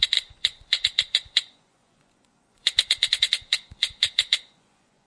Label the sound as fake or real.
fake